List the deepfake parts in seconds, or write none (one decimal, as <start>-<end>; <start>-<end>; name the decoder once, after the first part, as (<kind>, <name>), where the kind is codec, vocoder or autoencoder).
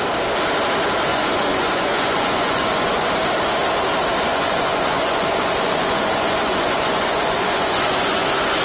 1.1-3.1 (vocoder, Vocos); 4.3-8.6